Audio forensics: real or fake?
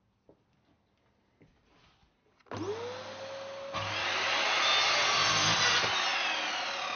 real